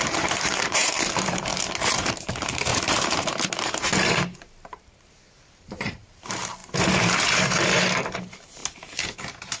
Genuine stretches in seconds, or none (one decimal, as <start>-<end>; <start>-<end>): 1.5-2.3